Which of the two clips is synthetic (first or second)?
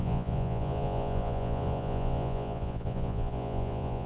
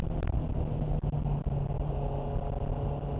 first